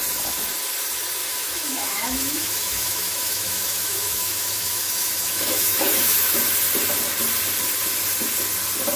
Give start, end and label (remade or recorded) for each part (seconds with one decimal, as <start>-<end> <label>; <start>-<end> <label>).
0.0-1.2 recorded; 1.2-6.4 remade; 6.4-9.0 recorded